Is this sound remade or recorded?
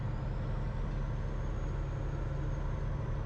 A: recorded